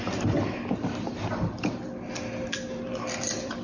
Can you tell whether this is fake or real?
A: fake